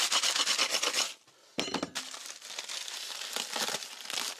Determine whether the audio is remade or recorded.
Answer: recorded